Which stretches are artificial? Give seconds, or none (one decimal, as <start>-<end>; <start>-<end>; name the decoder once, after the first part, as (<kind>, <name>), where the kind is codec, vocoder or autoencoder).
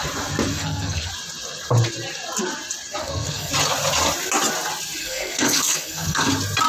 0.5-1.1 (codec, SNAC); 3.0-3.5; 5.0-6.3